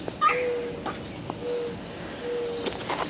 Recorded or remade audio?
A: recorded